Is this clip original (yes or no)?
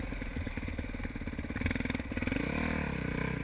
yes